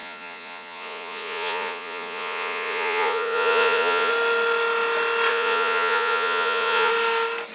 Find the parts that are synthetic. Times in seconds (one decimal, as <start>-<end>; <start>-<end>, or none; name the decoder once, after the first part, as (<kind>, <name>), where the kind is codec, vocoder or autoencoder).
0.0-4.1 (vocoder, Vocos); 5.3-6.9